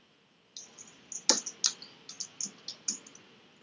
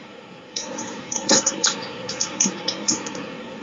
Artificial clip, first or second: second